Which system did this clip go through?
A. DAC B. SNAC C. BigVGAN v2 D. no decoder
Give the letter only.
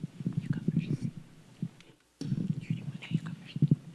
D